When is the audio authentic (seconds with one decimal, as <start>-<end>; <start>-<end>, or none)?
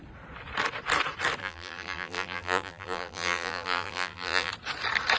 0.0-1.4; 4.5-5.2